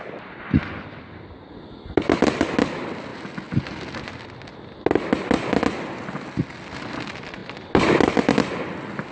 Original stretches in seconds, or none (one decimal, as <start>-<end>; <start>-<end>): 0.0-9.1